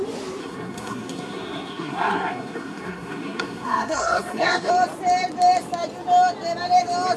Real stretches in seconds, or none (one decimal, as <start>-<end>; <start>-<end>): 0.0-0.4; 4.7-7.2